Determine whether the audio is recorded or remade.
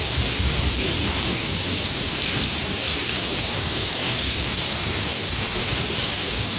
remade